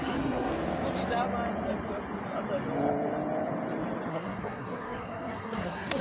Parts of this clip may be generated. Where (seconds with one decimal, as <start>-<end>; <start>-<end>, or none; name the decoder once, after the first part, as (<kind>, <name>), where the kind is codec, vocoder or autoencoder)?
0.0-0.5 (codec, SNAC); 4.1-6.0